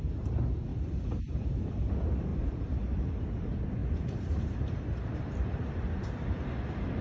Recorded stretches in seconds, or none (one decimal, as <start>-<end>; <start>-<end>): 0.0-0.7; 1.9-2.3; 3.2-3.8; 5.6-7.0